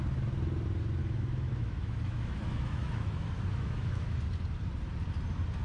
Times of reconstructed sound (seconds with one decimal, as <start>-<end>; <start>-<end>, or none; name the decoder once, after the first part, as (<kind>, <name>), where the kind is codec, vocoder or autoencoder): 1.0-4.2 (autoencoder, DAC-VAE)

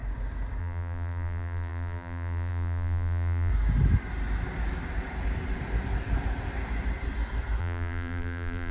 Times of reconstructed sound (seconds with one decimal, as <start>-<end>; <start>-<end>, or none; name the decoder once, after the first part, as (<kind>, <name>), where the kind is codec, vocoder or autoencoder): 0.6-3.5 (vocoder, BigVGAN v2); 7.6-8.7